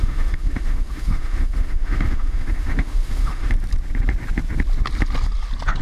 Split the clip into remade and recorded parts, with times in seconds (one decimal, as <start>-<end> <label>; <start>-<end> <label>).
0.0-3.5 remade; 3.5-5.8 recorded